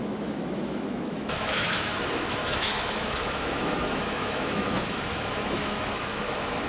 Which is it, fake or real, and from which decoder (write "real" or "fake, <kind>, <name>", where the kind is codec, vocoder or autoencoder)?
fake, autoencoder, DAC-VAE